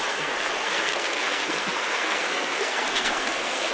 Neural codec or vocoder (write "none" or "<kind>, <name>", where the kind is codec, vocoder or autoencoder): codec, SNAC